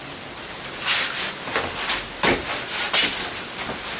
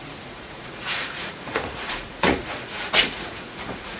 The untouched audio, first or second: first